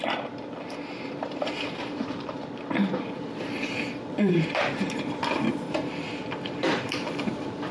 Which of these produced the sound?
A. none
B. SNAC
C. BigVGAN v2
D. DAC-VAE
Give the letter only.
C